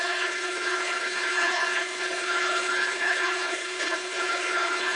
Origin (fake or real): fake